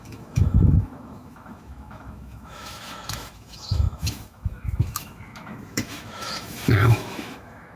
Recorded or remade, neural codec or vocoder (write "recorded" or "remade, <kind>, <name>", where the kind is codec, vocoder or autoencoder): remade, autoencoder, DAC-VAE